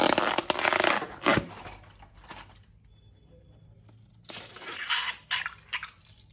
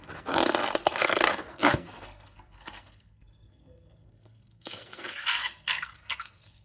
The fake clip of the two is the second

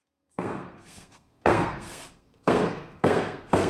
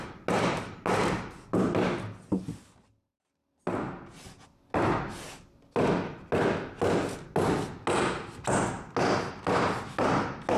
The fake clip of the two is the first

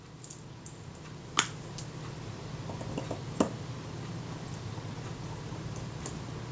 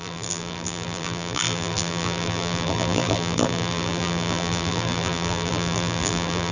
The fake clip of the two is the second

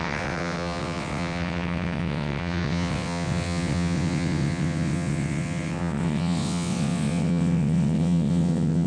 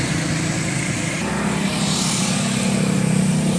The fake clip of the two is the first